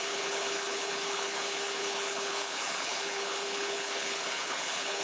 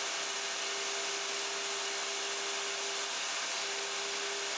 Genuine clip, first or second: second